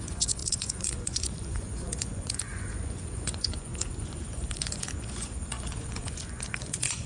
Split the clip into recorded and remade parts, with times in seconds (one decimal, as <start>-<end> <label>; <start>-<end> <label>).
0.0-7.1 remade